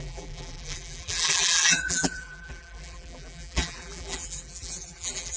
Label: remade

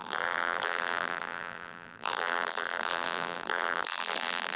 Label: remade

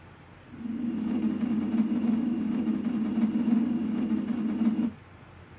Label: recorded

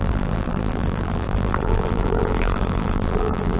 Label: remade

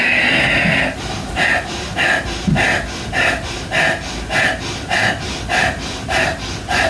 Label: recorded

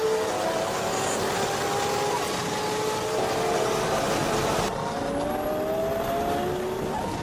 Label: recorded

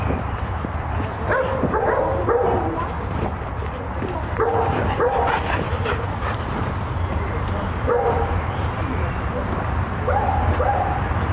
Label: remade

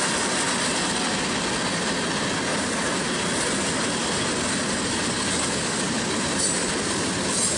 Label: recorded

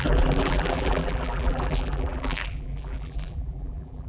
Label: remade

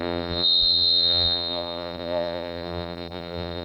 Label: remade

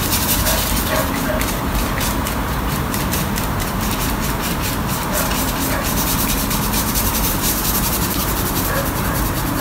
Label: remade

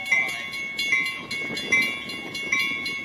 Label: recorded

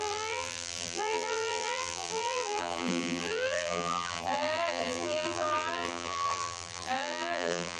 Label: remade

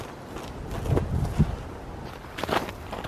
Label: recorded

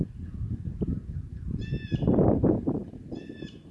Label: remade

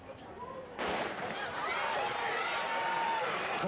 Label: remade